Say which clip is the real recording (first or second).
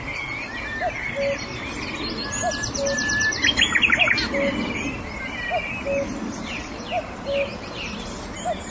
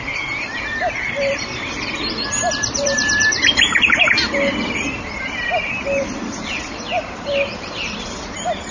first